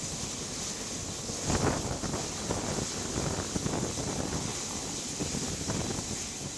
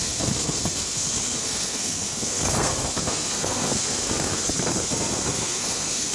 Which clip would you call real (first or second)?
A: first